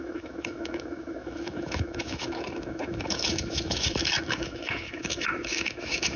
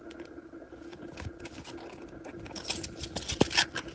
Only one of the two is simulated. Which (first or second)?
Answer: first